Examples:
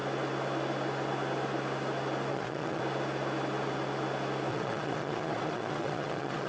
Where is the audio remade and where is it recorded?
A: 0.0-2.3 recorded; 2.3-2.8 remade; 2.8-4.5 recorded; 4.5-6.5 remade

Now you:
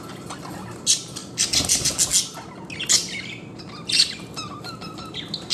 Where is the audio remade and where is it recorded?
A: 0.0-5.5 recorded

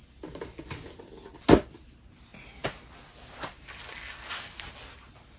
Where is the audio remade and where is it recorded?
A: 0.0-5.4 recorded

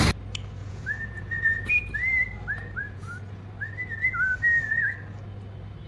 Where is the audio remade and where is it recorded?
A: 0.0-0.6 recorded; 0.6-1.7 remade; 1.7-2.8 recorded; 2.8-3.4 remade; 3.4-5.9 recorded

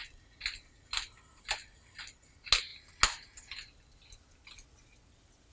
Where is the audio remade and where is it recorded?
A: 0.0-5.5 recorded